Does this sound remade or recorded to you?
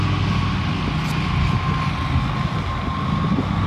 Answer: recorded